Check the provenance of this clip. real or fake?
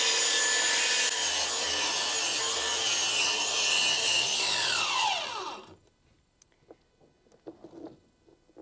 real